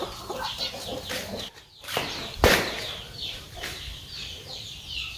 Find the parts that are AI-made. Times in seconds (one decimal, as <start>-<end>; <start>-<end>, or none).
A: 0.0-0.9; 1.7-3.9; 4.5-5.2